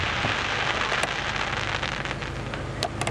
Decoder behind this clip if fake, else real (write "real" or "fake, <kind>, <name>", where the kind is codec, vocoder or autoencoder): real